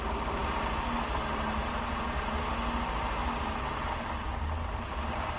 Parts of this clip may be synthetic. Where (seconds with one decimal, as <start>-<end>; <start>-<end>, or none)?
none